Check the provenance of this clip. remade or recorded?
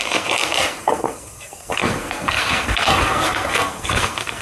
remade